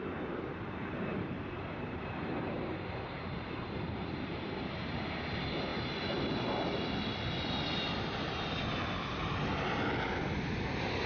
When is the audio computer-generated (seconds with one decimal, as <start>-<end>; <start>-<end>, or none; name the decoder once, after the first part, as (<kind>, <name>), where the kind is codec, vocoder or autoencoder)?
0.0-5.7 (vocoder, BigVGAN v2); 10.3-11.1